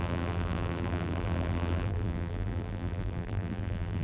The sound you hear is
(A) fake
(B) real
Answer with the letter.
A